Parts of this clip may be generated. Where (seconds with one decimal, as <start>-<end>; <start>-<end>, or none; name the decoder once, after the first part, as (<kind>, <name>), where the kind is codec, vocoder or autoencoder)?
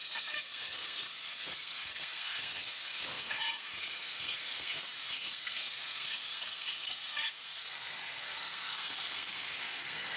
0.0-10.2 (codec, SNAC)